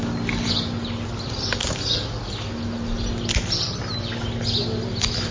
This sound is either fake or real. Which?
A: real